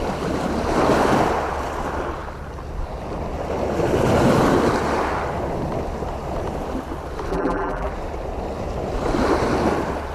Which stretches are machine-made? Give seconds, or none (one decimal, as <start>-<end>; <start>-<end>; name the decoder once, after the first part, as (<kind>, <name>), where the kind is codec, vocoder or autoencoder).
7.3-7.9 (vocoder, BigVGAN v2)